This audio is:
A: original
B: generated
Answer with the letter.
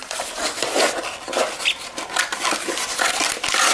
A